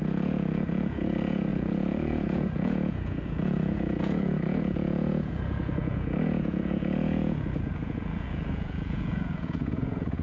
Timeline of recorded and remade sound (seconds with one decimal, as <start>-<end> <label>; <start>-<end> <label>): 0.0-10.2 remade